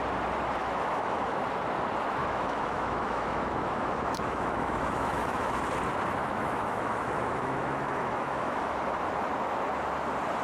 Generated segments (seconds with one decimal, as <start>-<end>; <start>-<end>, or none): 0.6-1.4; 2.2-5.6; 6.2-8.8